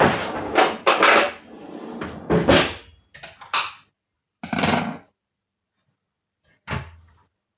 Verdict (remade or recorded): recorded